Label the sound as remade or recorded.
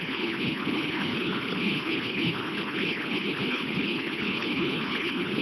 remade